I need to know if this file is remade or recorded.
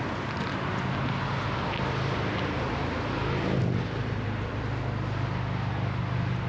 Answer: recorded